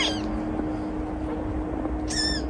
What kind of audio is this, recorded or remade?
recorded